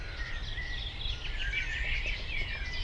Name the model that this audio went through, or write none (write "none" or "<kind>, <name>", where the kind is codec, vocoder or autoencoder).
none